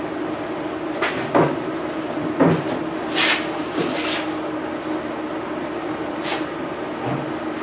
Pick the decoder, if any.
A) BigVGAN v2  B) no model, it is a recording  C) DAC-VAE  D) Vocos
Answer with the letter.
B